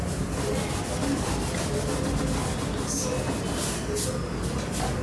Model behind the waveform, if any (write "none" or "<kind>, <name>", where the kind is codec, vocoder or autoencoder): none